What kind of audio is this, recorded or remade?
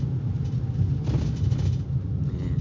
recorded